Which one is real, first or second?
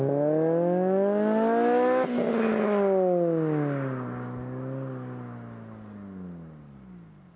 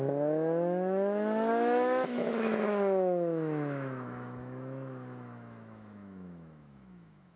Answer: first